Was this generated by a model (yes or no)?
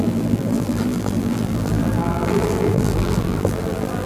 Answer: yes